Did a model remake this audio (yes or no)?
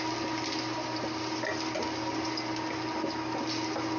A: no